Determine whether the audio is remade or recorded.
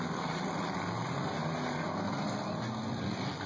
recorded